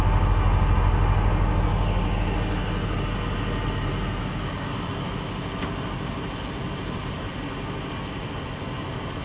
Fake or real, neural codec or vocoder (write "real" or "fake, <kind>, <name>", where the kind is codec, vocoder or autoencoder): real